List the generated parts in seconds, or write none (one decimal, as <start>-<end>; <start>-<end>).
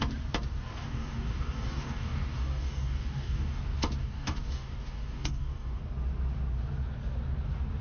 0.7-3.6; 4.0-5.8